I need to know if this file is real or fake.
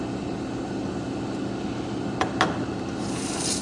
real